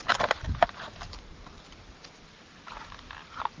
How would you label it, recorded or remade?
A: recorded